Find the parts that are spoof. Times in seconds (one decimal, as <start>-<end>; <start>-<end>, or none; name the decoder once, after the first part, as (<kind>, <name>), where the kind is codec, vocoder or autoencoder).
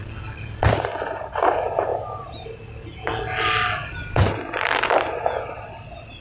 none